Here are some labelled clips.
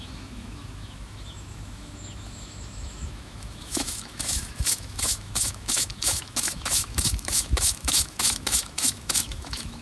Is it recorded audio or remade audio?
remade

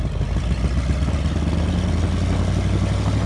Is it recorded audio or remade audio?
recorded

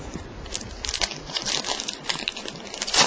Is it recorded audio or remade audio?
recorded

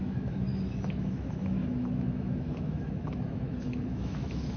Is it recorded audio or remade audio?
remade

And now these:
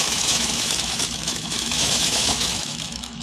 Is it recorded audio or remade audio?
remade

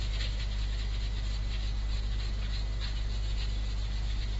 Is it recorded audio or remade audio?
recorded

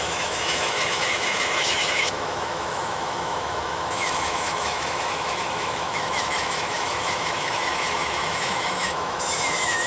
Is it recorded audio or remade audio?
remade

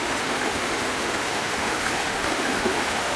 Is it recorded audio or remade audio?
remade